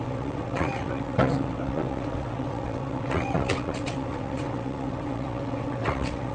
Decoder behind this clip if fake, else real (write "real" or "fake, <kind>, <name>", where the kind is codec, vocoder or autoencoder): fake, vocoder, WaveNeXt